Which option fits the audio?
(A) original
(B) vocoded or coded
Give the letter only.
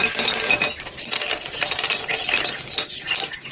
A